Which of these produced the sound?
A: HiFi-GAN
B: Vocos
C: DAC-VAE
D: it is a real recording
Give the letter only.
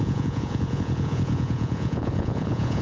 B